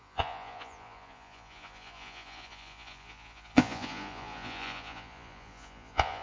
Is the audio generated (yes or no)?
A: yes